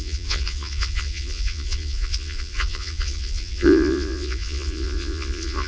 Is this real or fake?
fake